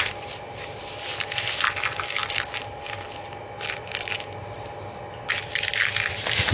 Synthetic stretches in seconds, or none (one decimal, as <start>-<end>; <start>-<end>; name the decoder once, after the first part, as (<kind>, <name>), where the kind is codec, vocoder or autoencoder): none